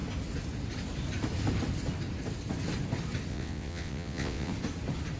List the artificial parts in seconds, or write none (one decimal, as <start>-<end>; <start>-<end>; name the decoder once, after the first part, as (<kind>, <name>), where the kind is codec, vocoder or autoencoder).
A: 3.3-4.5 (vocoder, WaveNeXt)